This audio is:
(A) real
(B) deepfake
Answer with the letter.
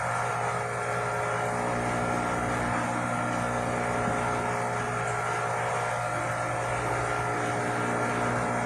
A